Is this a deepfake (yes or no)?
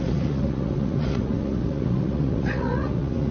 yes